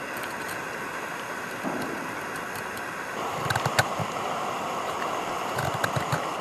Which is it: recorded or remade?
recorded